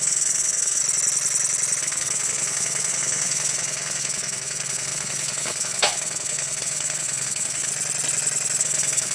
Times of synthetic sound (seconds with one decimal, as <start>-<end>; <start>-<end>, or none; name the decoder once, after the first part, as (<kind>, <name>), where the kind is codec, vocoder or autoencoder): 0.0-0.8 (codec, SNAC); 1.8-7.7; 8.6-9.1